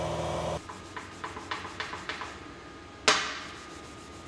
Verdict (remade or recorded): recorded